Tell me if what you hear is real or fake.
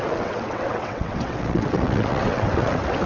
fake